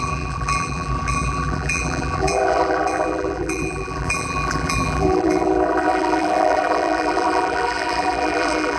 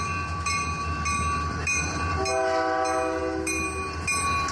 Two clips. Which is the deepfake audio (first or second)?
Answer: first